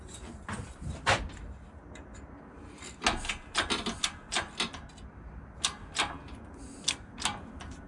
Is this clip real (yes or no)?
yes